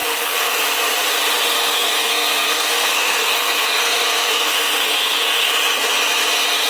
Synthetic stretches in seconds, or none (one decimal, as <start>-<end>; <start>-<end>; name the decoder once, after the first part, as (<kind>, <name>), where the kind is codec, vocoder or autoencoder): 0.0-0.6 (codec, SNAC); 1.6-5.5